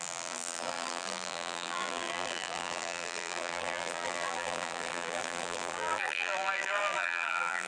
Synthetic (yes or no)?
yes